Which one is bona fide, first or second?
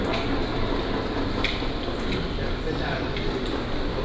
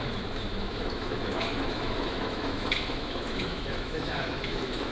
first